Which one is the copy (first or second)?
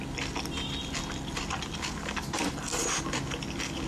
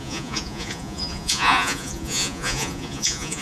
second